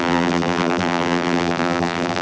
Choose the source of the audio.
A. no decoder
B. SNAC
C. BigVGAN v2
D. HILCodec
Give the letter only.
C